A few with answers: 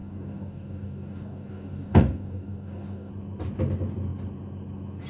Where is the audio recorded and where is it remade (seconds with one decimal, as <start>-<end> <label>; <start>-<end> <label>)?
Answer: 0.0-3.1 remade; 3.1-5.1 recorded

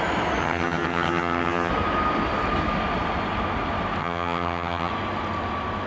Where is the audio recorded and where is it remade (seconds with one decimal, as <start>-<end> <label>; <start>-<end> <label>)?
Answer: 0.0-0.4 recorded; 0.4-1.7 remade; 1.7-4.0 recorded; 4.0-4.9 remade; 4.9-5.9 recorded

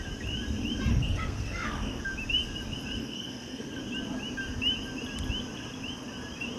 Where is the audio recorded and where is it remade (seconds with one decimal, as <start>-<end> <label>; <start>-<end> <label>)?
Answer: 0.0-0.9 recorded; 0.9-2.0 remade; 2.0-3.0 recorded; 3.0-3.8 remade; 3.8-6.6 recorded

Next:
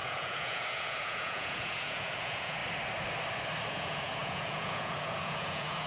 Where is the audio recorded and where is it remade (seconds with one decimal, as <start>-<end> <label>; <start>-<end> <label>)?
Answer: 0.0-2.6 remade; 2.6-3.7 recorded; 3.7-5.9 remade

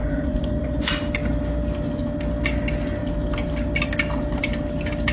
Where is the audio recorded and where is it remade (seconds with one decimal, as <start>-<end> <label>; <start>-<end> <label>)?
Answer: 0.0-0.9 remade; 0.9-5.1 recorded